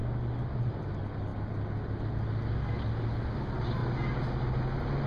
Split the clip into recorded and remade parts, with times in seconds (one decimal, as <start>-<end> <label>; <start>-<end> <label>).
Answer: 0.0-5.1 recorded